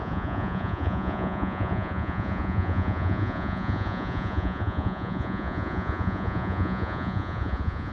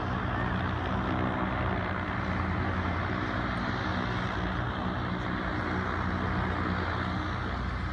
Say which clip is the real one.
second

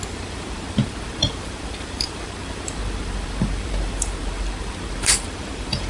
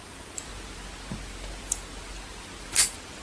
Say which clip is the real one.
second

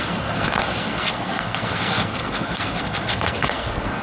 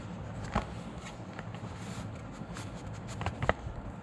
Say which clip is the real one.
second